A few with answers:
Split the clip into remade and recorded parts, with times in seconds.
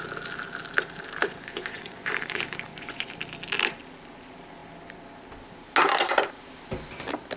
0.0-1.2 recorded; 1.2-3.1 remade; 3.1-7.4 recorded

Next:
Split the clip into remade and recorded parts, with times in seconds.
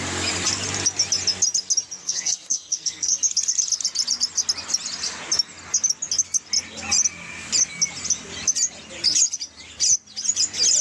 0.0-2.0 recorded; 2.0-3.1 remade; 3.1-10.8 recorded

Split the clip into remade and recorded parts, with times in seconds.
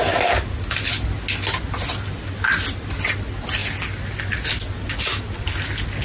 0.0-6.0 recorded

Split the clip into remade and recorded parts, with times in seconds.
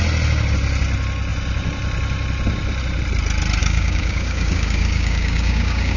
0.0-3.6 recorded; 3.6-6.0 remade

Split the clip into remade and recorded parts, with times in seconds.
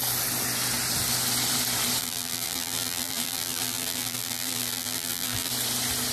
0.0-2.0 recorded; 2.0-5.5 remade; 5.5-6.1 recorded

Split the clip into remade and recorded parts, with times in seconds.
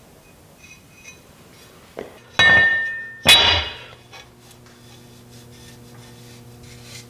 0.0-7.1 recorded